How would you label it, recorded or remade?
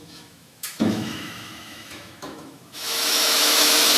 remade